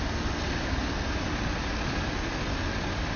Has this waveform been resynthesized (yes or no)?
no